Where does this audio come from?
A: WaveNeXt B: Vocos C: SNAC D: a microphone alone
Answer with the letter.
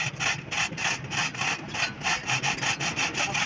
D